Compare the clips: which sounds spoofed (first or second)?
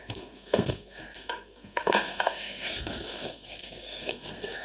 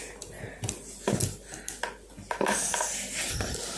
first